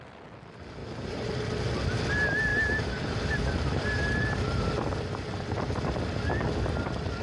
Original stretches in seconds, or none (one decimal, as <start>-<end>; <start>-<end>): 0.0-0.8; 1.3-2.5; 4.4-7.2